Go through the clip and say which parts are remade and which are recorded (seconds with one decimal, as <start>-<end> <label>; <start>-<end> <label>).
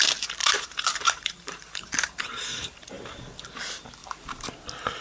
0.0-0.4 recorded; 0.4-3.2 remade; 3.2-4.0 recorded; 4.0-4.5 remade; 4.5-5.0 recorded